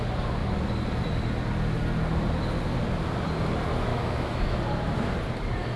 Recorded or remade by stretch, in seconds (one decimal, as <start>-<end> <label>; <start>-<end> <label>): 0.0-3.9 recorded; 3.9-4.6 remade; 4.6-5.8 recorded

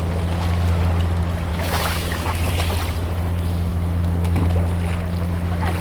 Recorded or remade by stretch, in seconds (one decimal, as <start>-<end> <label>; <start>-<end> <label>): 0.0-1.5 recorded; 1.5-2.5 remade; 2.5-3.7 recorded; 3.7-4.4 remade; 4.4-5.8 recorded

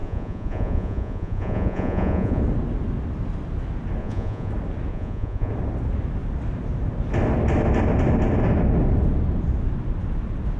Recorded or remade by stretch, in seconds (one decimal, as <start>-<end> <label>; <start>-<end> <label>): 0.0-2.4 remade; 2.4-4.0 recorded; 4.0-4.5 remade; 4.5-4.9 recorded; 4.9-5.5 remade; 5.5-10.6 recorded

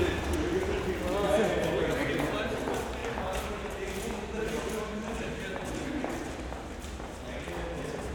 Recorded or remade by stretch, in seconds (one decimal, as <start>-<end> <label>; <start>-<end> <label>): 0.0-8.1 recorded

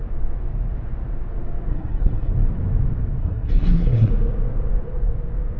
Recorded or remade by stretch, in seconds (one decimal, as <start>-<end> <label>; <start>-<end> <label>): 0.0-1.7 recorded; 1.7-2.3 remade; 2.3-3.2 recorded; 3.2-4.1 remade; 4.1-5.6 recorded

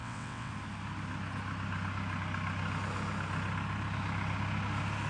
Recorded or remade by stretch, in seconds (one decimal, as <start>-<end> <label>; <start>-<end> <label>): 0.0-0.5 remade; 0.5-5.1 recorded